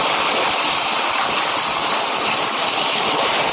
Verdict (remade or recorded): recorded